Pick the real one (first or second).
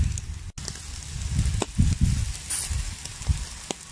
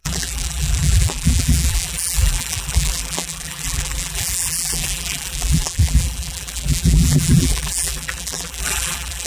first